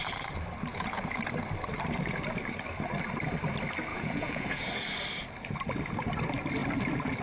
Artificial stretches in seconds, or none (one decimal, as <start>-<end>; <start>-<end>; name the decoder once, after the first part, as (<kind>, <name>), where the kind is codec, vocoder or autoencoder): 0.7-1.2 (vocoder, Vocos); 3.9-4.7